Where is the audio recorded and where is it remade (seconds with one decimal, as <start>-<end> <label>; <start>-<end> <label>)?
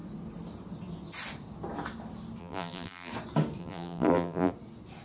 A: 0.0-2.4 recorded; 2.4-3.1 remade; 3.1-3.6 recorded; 3.6-4.5 remade; 4.5-5.0 recorded